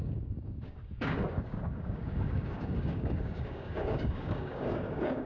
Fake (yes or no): yes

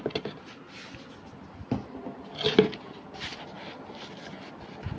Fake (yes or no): no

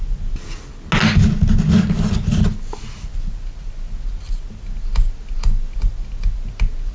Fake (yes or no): no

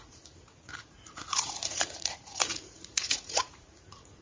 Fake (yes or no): yes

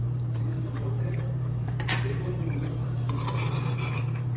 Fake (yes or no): yes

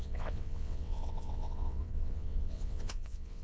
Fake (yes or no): yes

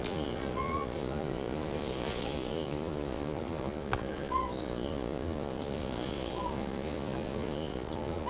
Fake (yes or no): yes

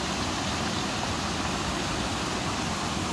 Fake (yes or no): no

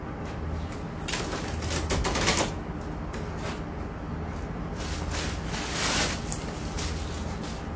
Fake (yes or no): no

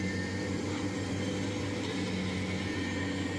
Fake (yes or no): no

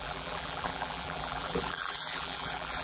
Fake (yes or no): yes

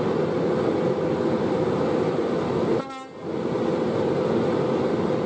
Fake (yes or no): no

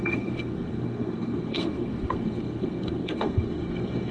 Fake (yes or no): yes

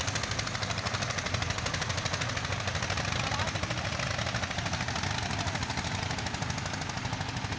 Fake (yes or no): no